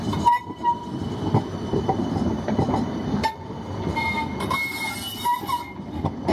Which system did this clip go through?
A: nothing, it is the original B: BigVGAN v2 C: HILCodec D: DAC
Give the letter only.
A